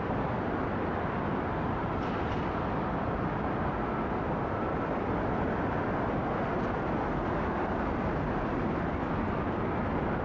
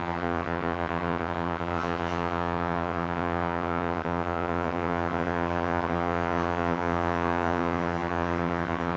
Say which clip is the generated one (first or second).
second